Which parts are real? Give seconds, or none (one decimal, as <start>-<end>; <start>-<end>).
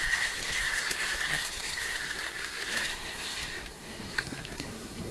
none